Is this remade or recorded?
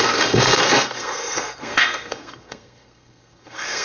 remade